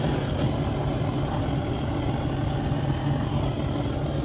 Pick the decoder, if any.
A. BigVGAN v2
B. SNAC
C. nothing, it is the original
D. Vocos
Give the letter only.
C